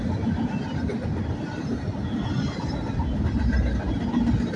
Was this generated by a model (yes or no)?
no